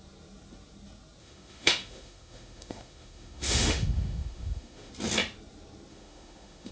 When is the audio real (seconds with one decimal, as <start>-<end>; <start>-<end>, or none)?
0.0-1.2; 4.9-5.9